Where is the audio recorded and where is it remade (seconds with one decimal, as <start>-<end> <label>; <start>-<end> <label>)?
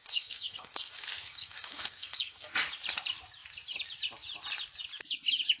0.0-2.5 remade; 2.5-5.6 recorded